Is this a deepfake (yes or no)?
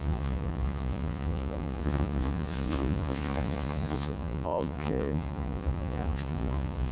yes